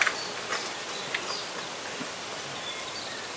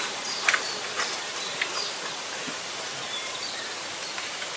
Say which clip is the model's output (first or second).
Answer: second